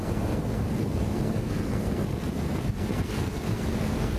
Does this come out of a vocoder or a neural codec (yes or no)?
yes